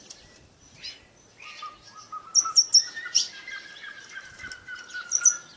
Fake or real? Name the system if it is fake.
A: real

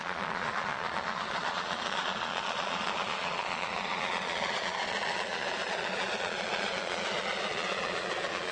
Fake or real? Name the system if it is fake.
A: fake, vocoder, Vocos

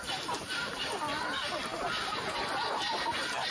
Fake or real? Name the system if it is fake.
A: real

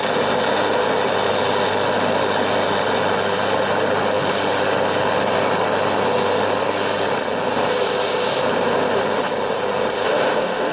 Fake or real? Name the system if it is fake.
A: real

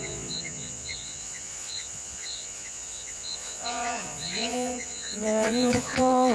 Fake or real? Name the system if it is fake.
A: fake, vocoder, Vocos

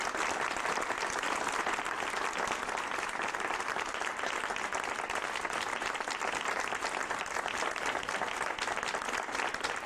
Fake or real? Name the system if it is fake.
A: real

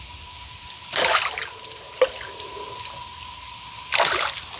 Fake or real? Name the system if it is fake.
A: real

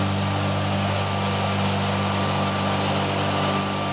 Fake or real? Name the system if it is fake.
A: real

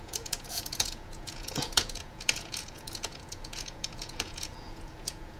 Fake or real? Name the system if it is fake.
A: fake, vocoder, Vocos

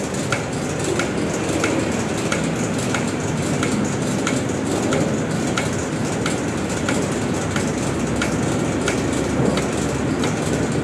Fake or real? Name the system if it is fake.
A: real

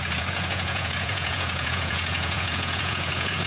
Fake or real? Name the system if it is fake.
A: fake, vocoder, Vocos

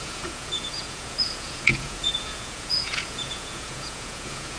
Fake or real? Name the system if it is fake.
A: fake, vocoder, Vocos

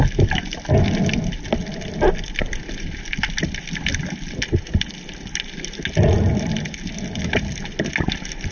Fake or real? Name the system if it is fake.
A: real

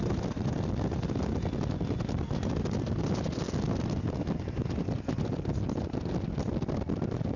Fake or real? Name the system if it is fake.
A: real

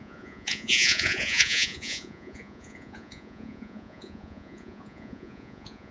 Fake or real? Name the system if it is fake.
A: fake, vocoder, Vocos